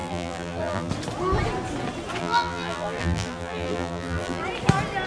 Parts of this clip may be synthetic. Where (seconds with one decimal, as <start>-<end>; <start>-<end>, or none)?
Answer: 0.0-0.9; 2.2-4.4